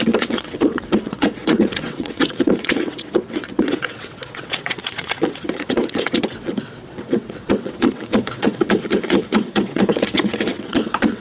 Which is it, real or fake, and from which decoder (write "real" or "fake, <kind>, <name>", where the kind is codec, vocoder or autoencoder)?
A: fake, vocoder, WaveNeXt